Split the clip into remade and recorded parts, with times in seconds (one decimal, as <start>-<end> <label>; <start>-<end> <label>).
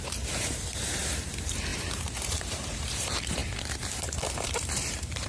0.0-5.3 remade